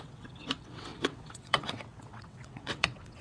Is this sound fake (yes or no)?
yes